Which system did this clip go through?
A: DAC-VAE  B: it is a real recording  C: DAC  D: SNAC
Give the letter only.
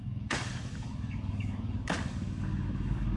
C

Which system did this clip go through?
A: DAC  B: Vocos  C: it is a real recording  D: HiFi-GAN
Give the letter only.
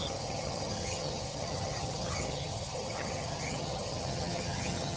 D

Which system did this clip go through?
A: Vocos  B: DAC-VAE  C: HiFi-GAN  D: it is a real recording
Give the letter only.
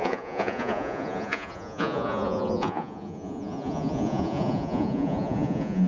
A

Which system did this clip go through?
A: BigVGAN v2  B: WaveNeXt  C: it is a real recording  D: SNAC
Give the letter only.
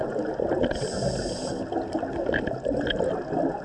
C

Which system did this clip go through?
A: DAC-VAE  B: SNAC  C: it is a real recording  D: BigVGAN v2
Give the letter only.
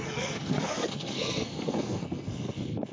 B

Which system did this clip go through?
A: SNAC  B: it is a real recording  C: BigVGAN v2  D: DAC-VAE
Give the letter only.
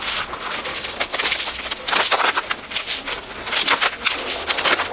B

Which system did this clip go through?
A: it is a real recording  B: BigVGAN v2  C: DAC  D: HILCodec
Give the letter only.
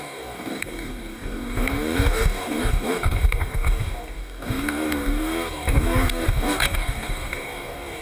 C